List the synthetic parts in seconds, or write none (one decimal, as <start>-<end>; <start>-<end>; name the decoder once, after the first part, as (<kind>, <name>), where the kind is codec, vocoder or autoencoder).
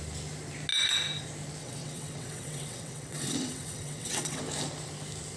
1.6-4.4 (vocoder, WaveNeXt)